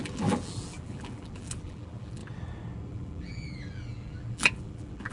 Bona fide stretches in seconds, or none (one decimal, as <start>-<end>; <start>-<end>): 2.2-2.9